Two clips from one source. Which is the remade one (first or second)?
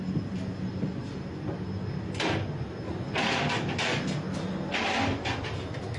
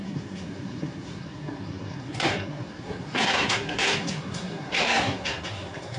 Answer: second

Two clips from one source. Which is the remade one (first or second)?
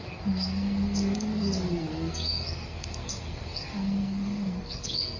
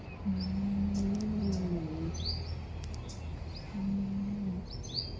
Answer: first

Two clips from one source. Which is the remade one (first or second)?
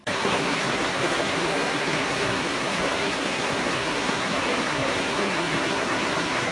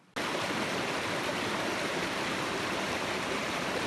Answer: first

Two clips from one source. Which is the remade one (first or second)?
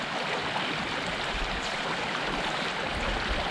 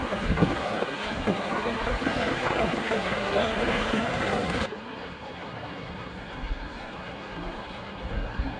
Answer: second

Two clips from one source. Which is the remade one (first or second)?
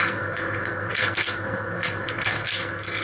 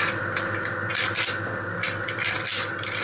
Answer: first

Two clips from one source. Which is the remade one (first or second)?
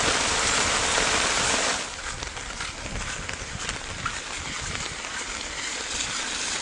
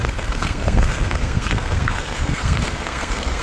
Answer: second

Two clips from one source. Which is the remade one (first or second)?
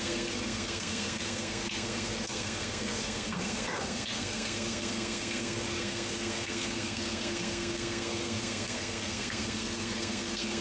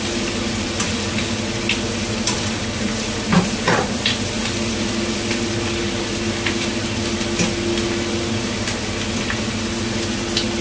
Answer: first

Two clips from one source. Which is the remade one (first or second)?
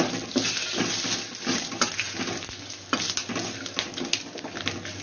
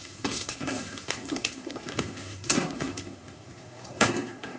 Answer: second